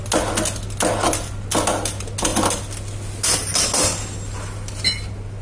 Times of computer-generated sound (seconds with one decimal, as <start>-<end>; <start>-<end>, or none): none